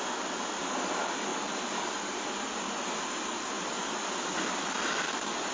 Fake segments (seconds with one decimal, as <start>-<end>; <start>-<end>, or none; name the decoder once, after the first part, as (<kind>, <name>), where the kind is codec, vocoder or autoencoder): none